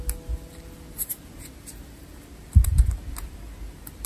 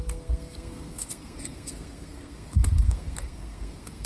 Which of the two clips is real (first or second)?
first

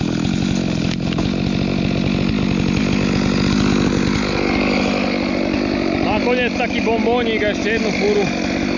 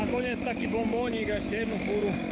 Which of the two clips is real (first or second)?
first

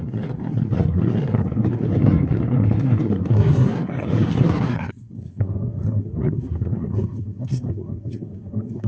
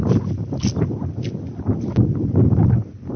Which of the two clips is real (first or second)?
second